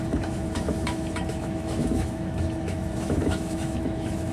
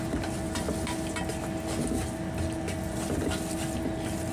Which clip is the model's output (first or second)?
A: first